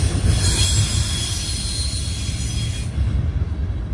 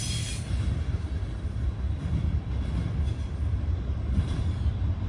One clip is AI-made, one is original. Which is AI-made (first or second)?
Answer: second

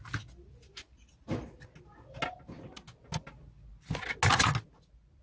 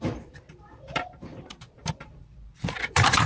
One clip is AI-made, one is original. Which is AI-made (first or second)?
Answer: second